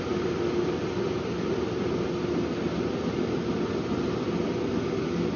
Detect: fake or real real